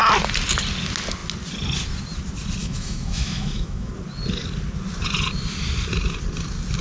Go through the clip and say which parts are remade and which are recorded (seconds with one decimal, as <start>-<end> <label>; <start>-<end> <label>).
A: 0.0-2.6 recorded; 2.6-3.9 remade; 3.9-6.8 recorded